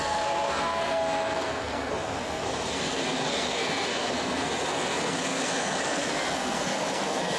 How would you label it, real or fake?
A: fake